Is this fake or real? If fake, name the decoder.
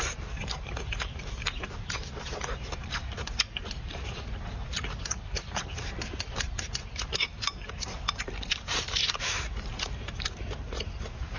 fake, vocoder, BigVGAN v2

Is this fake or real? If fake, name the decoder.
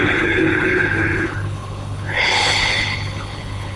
fake, codec, HILCodec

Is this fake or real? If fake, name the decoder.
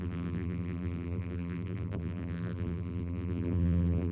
fake, vocoder, BigVGAN v2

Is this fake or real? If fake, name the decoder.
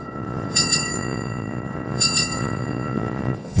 fake, vocoder, Vocos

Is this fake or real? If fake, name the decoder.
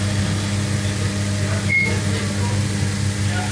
real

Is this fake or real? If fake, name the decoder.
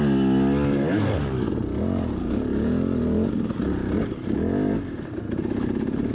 real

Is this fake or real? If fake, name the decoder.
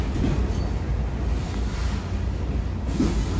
real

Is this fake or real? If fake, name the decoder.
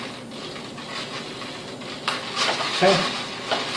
real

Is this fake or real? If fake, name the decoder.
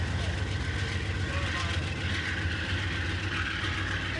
real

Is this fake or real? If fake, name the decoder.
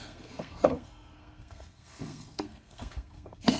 fake, codec, SNAC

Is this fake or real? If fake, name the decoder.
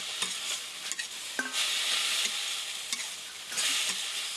real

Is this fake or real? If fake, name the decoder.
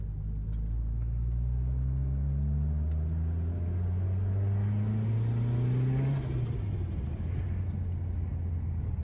real